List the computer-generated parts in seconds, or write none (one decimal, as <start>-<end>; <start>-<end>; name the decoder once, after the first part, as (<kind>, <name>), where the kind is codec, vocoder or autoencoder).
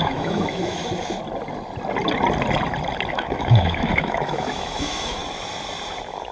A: 0.0-0.8 (autoencoder, DAC-VAE); 3.1-5.2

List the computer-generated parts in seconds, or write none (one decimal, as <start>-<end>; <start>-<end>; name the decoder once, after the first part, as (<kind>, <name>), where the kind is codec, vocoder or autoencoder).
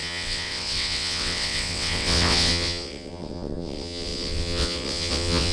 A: 0.0-5.5 (vocoder, WaveNeXt)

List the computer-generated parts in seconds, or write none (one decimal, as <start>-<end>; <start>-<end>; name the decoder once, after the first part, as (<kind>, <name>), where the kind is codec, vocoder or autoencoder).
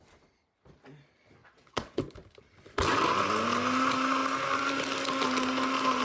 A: 1.4-2.0 (vocoder, WaveNeXt)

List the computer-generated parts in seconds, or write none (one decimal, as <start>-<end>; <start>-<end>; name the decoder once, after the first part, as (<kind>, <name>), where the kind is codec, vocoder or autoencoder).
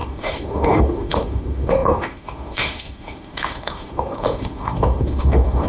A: 0.0-5.7 (autoencoder, DAC-VAE)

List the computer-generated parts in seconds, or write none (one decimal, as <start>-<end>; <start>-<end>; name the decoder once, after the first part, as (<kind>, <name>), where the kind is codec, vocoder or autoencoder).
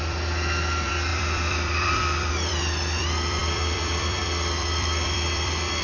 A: 0.0-5.8 (vocoder, BigVGAN v2)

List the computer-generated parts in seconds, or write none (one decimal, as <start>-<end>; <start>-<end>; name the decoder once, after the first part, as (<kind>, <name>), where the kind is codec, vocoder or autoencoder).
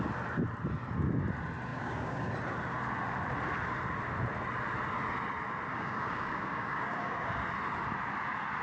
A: 1.7-2.3 (codec, DAC); 5.7-7.3